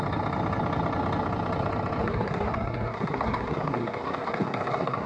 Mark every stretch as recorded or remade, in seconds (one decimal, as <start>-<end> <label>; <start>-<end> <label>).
0.0-2.0 recorded; 2.0-5.1 remade